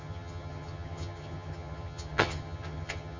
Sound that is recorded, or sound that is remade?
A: remade